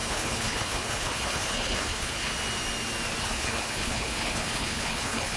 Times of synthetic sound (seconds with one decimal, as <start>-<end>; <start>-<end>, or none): 0.0-2.3; 3.2-5.4